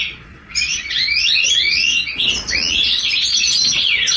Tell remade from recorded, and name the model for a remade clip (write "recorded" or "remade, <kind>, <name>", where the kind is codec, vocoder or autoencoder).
remade, vocoder, Vocos